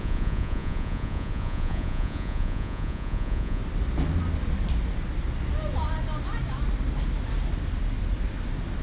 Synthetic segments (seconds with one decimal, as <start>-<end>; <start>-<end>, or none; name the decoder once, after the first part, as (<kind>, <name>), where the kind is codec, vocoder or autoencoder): 0.0-3.6 (vocoder, Vocos)